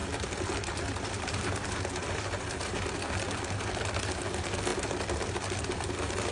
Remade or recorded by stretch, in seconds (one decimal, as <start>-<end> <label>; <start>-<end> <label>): 0.0-3.8 remade; 3.8-4.7 recorded; 4.7-6.3 remade